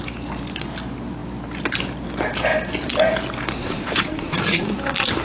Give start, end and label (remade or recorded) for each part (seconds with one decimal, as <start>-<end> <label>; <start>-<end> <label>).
0.0-3.6 recorded; 3.6-4.7 remade; 4.7-5.2 recorded